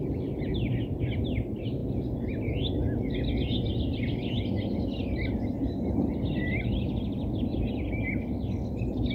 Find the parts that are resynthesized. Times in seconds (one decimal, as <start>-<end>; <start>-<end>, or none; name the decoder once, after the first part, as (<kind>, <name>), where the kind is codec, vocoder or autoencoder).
1.8-2.7 (vocoder, BigVGAN v2)